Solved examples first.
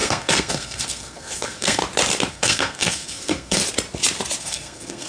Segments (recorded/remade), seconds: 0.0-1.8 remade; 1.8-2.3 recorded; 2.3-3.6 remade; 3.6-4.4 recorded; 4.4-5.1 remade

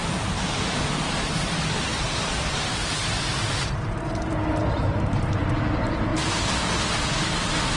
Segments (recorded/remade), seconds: 0.0-4.3 remade; 4.3-4.8 recorded; 4.8-5.5 remade; 5.5-7.8 recorded

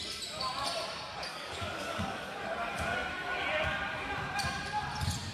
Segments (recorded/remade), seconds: 0.0-1.3 recorded; 1.3-2.3 remade; 2.3-5.3 recorded

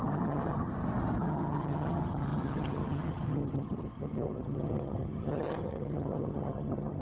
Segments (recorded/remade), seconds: 0.0-0.7 remade; 0.7-1.2 recorded; 1.2-7.0 remade

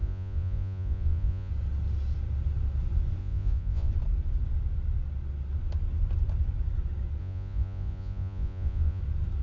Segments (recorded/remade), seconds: 0.0-1.5 remade; 1.5-3.2 recorded; 3.2-3.9 remade; 3.9-7.2 recorded; 7.2-9.0 remade; 9.0-9.4 recorded

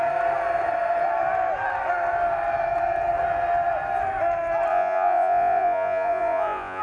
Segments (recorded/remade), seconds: 0.0-4.7 recorded; 4.7-6.8 remade